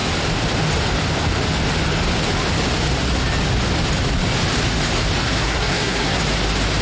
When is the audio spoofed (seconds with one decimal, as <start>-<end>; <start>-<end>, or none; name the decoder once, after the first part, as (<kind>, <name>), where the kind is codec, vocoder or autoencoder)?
5.2-6.2 (codec, SNAC)